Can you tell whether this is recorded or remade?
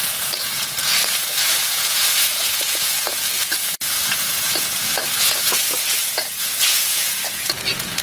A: remade